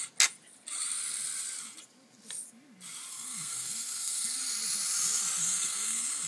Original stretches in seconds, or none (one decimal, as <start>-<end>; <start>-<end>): 0.0-3.1; 4.4-5.4